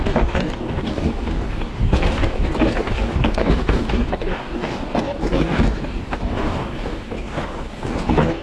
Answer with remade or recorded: remade